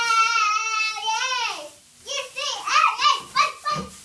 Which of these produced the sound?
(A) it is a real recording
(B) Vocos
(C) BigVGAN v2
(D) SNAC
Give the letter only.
A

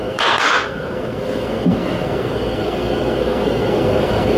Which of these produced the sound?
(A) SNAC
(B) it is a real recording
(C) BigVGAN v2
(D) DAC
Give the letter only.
A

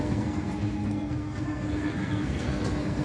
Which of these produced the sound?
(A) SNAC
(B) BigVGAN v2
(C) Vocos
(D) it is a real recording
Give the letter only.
A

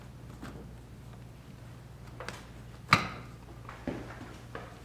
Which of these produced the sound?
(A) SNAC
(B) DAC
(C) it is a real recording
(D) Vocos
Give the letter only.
C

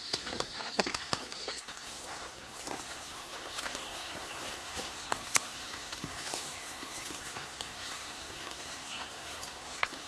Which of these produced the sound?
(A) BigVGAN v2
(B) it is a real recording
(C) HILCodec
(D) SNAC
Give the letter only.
D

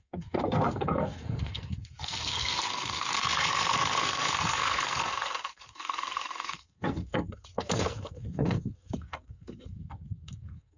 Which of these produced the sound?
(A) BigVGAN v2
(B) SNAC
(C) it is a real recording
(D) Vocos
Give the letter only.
B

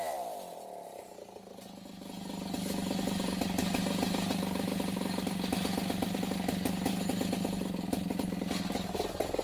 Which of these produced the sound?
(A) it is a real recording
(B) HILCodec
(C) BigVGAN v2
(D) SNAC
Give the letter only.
A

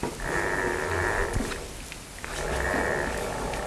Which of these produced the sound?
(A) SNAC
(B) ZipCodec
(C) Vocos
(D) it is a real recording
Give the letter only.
D